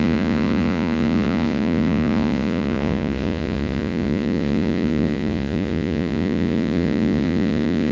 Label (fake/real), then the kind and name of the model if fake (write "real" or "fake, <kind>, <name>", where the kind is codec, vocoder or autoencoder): fake, vocoder, Vocos